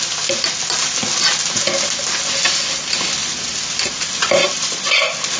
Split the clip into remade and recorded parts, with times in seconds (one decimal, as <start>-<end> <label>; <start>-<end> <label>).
0.0-3.2 recorded; 3.2-5.4 remade